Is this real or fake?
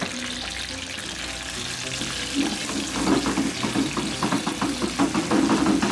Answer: real